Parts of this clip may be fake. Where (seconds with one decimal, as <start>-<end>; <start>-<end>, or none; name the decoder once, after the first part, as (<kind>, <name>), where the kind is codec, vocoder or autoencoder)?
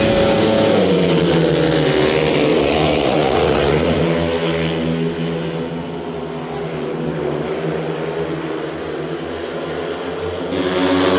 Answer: 2.5-4.0 (vocoder, Vocos)